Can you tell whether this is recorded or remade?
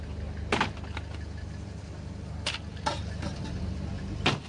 recorded